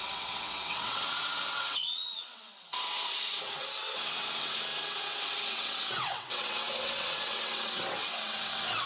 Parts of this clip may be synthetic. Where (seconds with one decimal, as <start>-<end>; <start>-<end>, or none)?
0.0-8.9

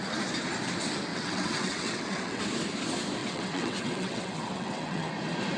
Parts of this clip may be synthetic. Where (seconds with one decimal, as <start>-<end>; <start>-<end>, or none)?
1.1-2.4; 3.2-5.1

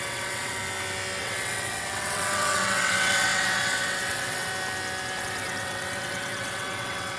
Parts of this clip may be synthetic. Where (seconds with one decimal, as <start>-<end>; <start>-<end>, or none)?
0.0-0.6; 1.2-4.5; 5.2-7.2

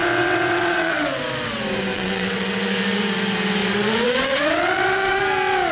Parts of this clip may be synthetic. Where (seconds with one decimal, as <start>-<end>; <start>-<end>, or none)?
0.0-1.2; 1.9-3.0; 3.6-5.2